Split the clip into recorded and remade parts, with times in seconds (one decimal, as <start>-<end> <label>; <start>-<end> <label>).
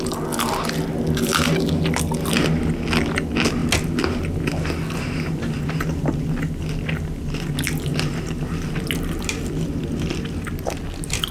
0.0-11.3 recorded